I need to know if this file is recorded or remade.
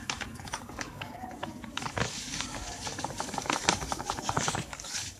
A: remade